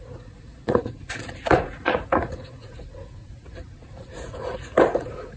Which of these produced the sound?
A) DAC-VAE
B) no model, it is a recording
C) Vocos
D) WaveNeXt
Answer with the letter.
C